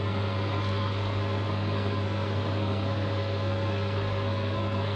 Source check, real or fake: fake